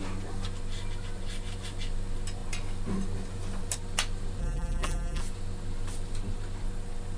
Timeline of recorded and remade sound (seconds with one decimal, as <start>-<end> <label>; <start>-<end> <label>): 0.0-4.4 recorded; 4.4-5.2 remade; 5.2-7.2 recorded